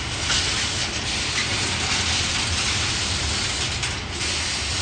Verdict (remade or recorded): recorded